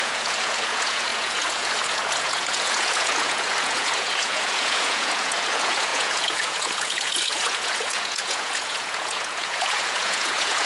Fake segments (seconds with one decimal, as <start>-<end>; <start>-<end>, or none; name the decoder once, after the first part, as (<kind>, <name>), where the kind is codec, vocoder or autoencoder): 0.0-10.7 (vocoder, Vocos)